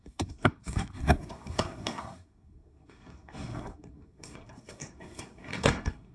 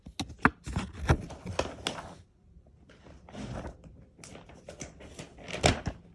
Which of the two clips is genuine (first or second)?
second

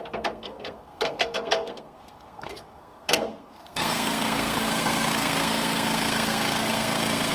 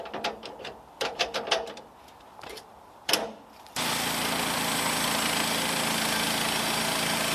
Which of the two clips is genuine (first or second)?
second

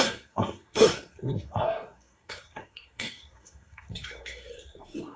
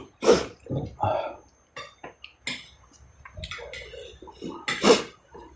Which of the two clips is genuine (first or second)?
second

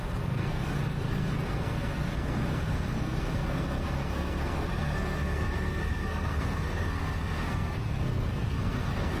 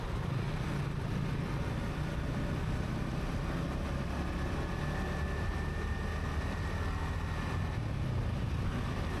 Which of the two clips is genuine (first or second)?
second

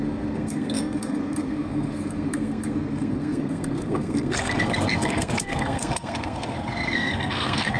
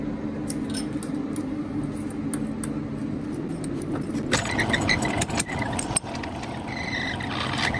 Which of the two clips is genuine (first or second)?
second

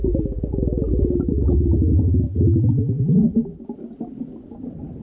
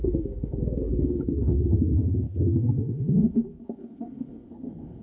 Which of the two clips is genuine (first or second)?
first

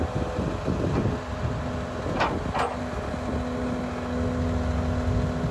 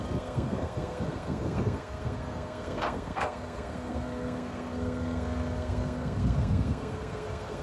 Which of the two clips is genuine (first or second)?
first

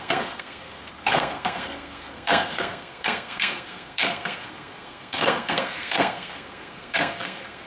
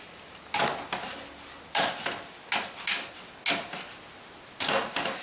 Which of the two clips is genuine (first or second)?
second